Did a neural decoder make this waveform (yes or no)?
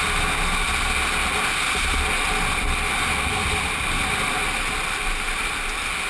no